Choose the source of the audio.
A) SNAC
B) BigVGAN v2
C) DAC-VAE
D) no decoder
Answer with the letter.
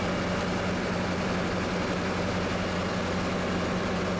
D